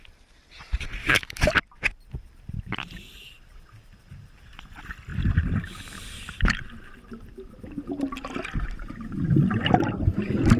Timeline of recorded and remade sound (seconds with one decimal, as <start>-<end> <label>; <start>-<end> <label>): 0.0-1.0 recorded; 1.0-1.5 remade; 1.5-10.6 recorded